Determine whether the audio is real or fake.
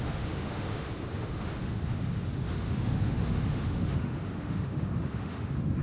fake